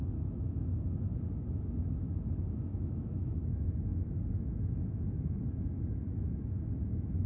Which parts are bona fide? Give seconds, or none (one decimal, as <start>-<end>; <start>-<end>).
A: none